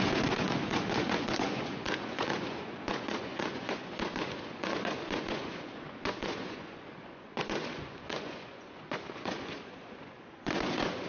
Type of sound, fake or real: fake